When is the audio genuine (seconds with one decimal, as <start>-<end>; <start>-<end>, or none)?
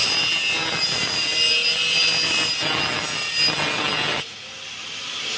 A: 0.0-5.4